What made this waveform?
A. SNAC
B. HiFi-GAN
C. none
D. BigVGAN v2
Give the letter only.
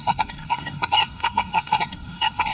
A